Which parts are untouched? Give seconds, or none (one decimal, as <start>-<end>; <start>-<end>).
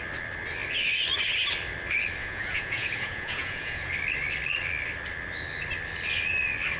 0.0-2.2; 3.9-6.8